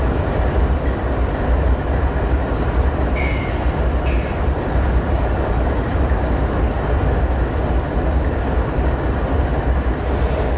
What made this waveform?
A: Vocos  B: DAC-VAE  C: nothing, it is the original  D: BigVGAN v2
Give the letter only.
C